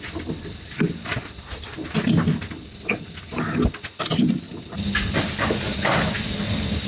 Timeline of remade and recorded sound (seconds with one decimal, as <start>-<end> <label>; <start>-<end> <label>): 0.0-6.9 recorded